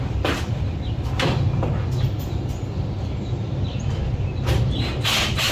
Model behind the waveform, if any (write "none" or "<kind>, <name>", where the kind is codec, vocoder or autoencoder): none